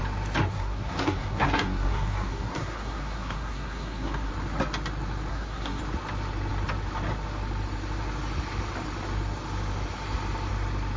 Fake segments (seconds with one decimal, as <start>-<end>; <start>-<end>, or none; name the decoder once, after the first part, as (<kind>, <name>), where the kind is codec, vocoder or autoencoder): 0.4-4.3 (codec, SNAC); 5.3-5.8

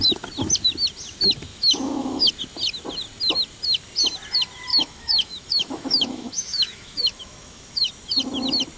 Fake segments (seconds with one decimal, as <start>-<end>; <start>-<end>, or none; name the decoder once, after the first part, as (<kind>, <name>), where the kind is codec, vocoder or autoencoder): 1.5-2.3 (autoencoder, DAC-VAE); 4.7-7.9

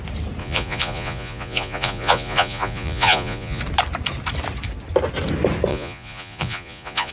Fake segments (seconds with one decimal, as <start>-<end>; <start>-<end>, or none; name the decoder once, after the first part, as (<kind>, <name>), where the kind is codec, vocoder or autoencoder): 0.4-3.6 (vocoder, Vocos); 5.7-7.1

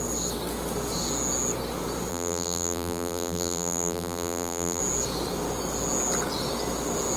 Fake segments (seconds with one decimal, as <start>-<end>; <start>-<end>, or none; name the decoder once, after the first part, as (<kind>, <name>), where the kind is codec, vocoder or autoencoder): 2.1-4.8 (vocoder, BigVGAN v2)

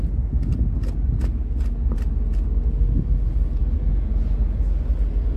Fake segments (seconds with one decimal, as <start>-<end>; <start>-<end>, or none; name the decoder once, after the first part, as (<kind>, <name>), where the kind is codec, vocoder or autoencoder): none